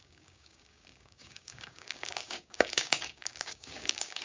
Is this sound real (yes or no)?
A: no